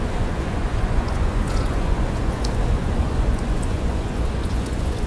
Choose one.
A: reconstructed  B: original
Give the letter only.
A